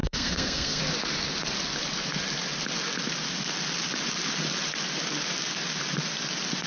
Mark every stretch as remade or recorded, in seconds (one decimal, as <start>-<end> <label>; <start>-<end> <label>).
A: 0.0-0.8 remade; 0.8-6.7 recorded